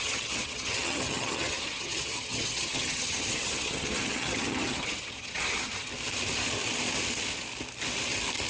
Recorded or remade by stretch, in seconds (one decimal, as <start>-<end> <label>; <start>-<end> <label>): 0.0-5.9 remade; 5.9-8.5 recorded